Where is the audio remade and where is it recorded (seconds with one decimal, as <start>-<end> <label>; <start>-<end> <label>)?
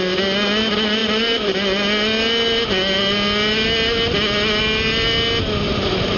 0.0-6.2 recorded